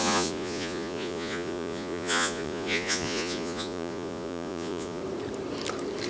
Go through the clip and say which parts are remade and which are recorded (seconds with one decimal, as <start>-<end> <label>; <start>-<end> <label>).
0.0-5.0 remade; 5.0-6.1 recorded